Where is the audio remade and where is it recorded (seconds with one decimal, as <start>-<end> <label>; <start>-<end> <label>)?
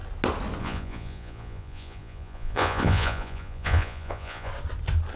0.0-0.6 recorded; 0.6-4.5 remade; 4.5-5.2 recorded